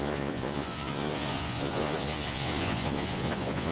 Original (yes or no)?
no